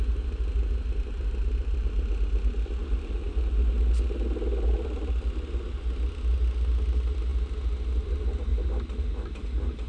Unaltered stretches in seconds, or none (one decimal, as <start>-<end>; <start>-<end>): 0.0-9.9